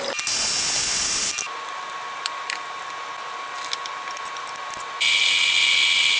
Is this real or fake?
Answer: real